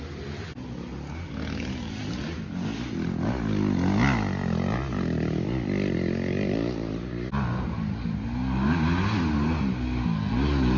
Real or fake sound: real